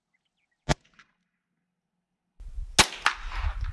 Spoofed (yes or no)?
no